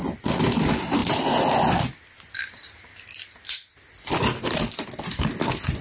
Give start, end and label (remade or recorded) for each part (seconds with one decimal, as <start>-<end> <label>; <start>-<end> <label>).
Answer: 0.0-5.8 recorded